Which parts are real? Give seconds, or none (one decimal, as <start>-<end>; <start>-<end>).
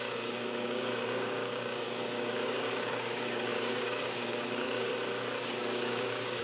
4.9-5.6